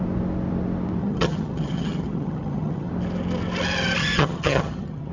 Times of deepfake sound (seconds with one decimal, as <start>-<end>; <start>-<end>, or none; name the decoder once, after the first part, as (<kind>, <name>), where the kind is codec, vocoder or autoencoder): 1.0-2.9 (vocoder, HiFi-GAN); 4.0-5.1